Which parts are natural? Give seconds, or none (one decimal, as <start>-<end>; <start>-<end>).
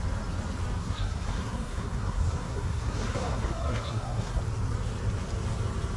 0.0-0.8; 4.4-6.0